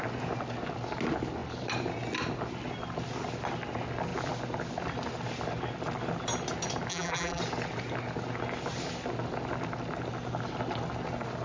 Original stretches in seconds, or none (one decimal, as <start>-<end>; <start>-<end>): 0.0-6.9; 7.4-11.4